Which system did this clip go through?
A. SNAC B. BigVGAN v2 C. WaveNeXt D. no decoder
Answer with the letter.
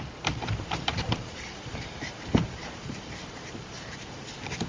B